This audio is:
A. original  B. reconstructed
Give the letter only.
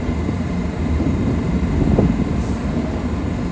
A